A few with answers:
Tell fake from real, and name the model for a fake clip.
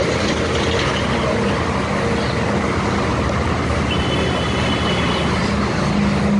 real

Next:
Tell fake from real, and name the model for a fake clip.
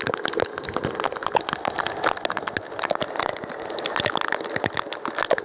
real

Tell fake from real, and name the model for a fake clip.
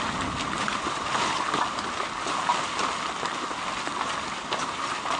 real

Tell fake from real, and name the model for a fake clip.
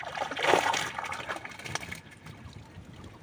real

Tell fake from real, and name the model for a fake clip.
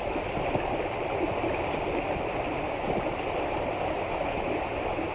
real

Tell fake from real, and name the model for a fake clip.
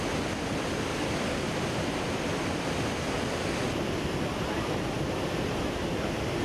real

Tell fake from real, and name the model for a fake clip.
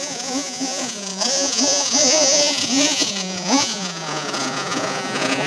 fake, vocoder, Vocos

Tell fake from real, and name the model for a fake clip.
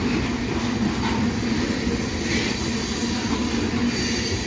real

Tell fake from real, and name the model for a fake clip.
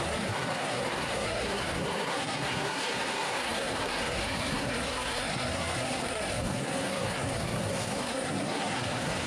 fake, codec, SNAC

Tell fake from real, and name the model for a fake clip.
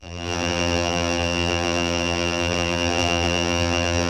fake, vocoder, BigVGAN v2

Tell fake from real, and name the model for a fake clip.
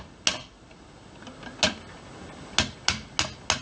real